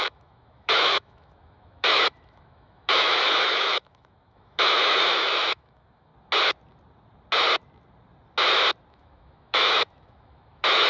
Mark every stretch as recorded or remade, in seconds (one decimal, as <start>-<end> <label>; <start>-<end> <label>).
0.0-6.1 remade; 6.1-8.9 recorded; 8.9-10.9 remade